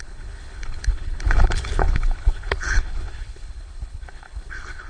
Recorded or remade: remade